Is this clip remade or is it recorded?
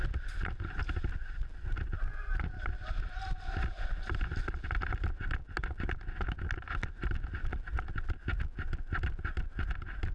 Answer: recorded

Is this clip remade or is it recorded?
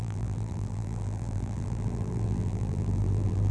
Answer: remade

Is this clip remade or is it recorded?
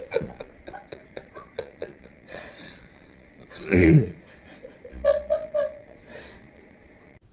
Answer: remade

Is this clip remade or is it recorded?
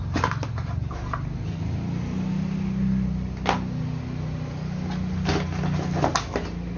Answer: recorded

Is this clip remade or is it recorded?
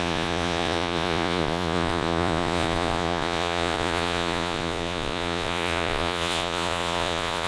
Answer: remade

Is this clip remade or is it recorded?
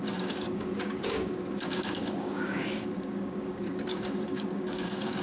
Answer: remade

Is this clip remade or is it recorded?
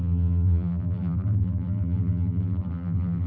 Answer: remade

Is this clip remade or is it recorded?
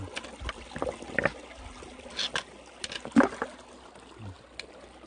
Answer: recorded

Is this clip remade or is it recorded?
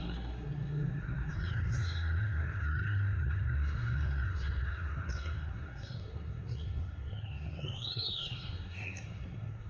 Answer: remade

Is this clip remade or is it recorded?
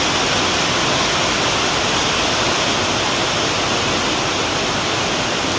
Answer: recorded